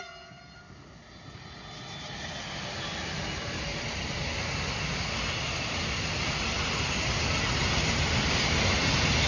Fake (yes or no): no